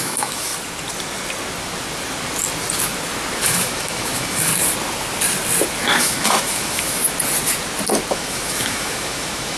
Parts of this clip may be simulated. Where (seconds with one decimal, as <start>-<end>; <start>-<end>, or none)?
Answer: 0.0-0.5; 3.4-4.5; 6.0-7.0; 8.1-9.6